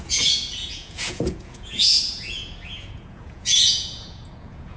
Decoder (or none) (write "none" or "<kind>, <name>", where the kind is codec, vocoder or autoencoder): vocoder, Vocos